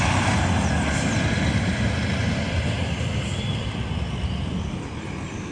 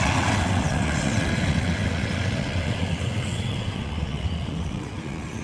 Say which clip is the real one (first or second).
first